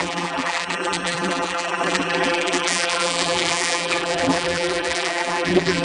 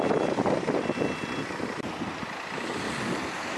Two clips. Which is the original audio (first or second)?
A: second